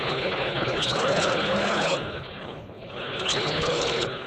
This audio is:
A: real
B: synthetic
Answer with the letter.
B